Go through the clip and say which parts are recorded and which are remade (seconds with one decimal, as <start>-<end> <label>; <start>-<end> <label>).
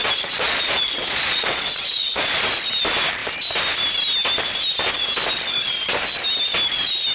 0.0-2.4 remade; 2.4-7.1 recorded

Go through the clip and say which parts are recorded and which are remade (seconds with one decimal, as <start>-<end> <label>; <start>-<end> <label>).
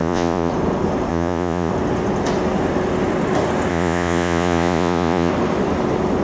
0.0-0.5 remade; 0.5-1.1 recorded; 1.1-1.7 remade; 1.7-3.7 recorded; 3.7-5.3 remade; 5.3-6.2 recorded